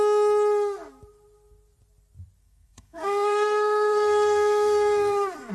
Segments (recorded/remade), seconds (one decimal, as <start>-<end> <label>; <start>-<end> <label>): 0.0-2.4 recorded; 2.4-5.5 remade